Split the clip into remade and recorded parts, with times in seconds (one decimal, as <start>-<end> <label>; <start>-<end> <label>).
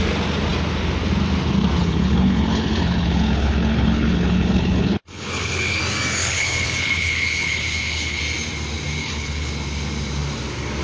0.0-1.8 recorded; 1.8-5.8 remade; 5.8-6.2 recorded; 6.2-8.2 remade; 8.2-9.0 recorded; 9.0-9.5 remade; 9.5-10.8 recorded